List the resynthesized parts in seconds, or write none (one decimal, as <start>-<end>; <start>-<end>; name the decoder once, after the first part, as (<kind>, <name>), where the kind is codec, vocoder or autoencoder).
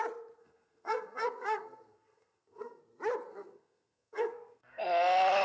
0.4-2.8 (codec, SNAC); 3.3-4.8